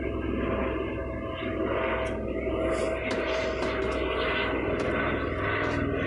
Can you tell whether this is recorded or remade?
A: recorded